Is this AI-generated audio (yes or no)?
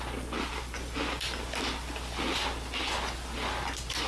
no